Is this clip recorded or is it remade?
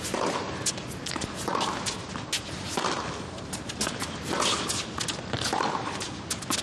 recorded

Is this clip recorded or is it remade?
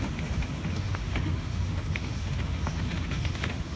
remade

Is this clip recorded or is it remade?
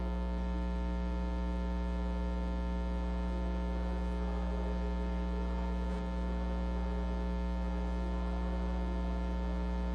recorded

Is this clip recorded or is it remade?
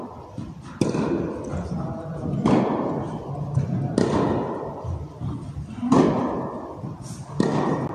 recorded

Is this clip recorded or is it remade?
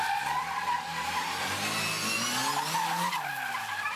recorded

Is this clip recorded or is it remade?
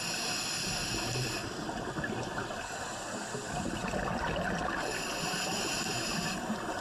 recorded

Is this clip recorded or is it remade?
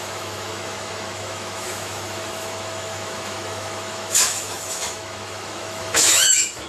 remade